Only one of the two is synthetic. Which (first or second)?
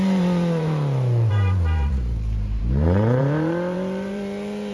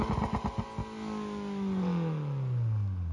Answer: first